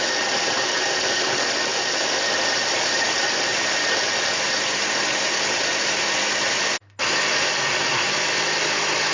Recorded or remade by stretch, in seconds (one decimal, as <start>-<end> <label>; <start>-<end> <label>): 0.0-9.1 recorded